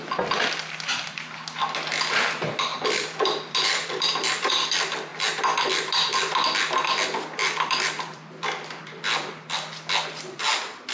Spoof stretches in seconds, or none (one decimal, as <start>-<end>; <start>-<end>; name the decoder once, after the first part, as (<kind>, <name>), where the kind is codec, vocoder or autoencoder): 2.7-4.5 (vocoder, BigVGAN v2); 5.1-6.1; 7.4-9.3